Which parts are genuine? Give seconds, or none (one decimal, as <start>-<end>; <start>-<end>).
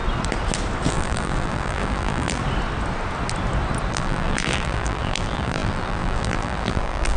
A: 0.0-0.9; 2.4-3.9